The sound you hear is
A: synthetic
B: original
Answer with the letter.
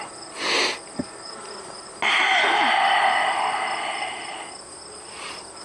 B